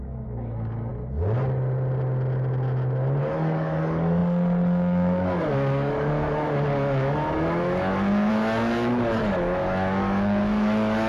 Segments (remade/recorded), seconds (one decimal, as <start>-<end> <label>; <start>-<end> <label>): 0.0-0.9 remade; 0.9-3.2 recorded; 3.2-11.1 remade